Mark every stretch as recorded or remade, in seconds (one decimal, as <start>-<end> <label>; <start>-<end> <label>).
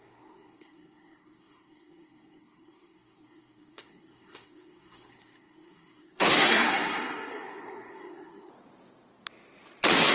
0.0-8.5 remade; 8.5-10.1 recorded